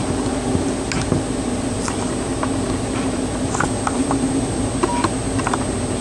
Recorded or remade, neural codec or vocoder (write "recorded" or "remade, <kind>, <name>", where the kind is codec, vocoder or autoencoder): recorded